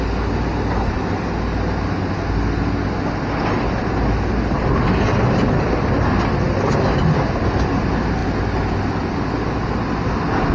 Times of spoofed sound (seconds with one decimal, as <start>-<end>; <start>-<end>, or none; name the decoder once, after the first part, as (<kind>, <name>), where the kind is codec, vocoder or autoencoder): none